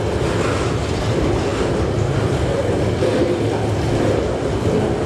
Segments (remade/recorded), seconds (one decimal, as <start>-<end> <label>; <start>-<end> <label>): 0.0-5.1 recorded